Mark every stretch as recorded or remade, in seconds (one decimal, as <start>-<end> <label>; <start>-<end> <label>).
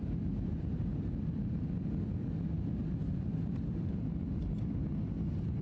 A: 0.0-0.8 remade; 0.8-2.2 recorded; 2.2-4.1 remade; 4.1-5.6 recorded